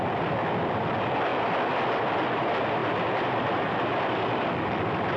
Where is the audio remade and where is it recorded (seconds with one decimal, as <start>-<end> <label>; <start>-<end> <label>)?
0.0-5.2 remade